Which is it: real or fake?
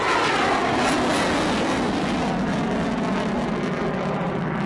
real